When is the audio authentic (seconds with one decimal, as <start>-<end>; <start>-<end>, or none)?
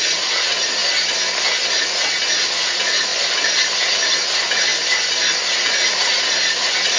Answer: 0.8-1.7; 3.1-4.1; 4.7-5.5